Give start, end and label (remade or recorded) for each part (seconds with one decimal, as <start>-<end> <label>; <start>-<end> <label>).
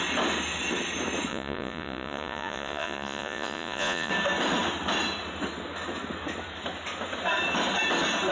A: 0.0-1.3 recorded; 1.3-4.1 remade; 4.1-8.3 recorded